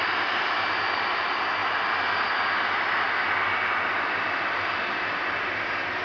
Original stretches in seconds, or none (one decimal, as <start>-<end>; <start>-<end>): 0.0-6.0